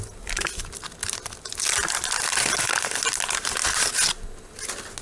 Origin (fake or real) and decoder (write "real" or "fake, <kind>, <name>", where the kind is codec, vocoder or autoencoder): real